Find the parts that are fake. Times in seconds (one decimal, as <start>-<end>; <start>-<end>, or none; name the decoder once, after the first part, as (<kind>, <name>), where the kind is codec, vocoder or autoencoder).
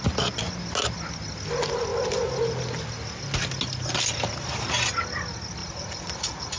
5.6-6.6 (vocoder, Vocos)